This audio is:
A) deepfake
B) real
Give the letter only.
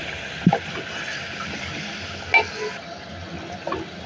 B